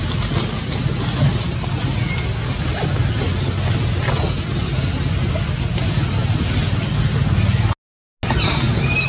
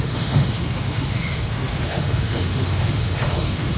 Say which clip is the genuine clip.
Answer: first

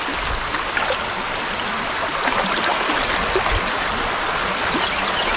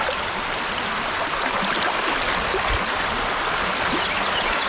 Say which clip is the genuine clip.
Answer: first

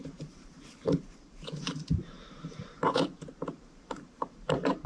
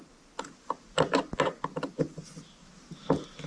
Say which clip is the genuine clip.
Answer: second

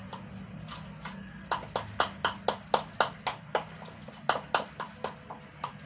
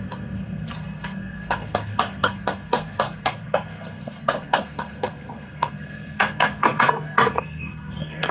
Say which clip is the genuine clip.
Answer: first